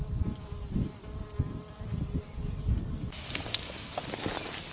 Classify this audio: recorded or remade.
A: recorded